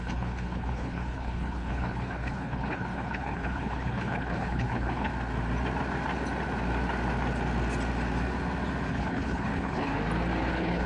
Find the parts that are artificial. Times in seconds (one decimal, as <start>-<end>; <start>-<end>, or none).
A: 0.0-5.1; 8.9-9.9; 10.5-10.9